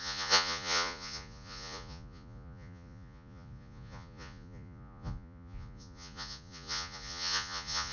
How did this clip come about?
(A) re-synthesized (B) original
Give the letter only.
A